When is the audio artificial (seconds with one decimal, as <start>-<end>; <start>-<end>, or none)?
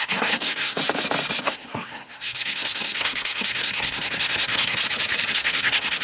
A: 0.0-0.8; 1.4-4.8; 5.3-6.0